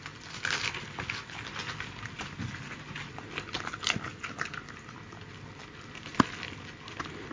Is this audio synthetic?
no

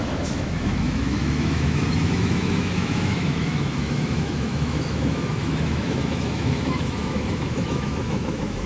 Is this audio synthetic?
yes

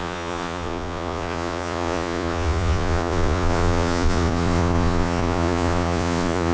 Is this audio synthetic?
yes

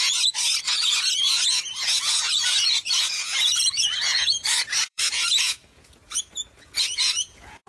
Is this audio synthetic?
yes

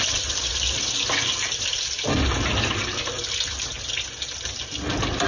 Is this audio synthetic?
no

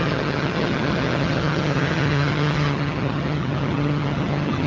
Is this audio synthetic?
yes